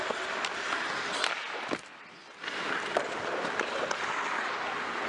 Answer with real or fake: real